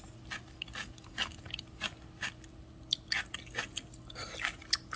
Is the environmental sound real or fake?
real